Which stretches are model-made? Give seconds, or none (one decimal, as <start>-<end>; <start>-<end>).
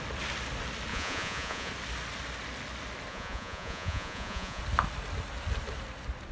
0.9-1.7; 3.1-4.6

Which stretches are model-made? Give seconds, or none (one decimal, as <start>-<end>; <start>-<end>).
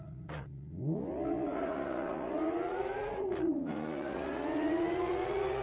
0.0-5.6